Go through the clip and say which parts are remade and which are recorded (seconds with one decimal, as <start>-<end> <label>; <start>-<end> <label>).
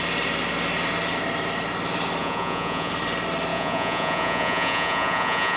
0.0-2.2 recorded; 2.2-2.9 remade; 2.9-3.5 recorded; 3.5-5.6 remade